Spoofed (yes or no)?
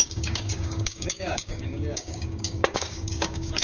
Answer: yes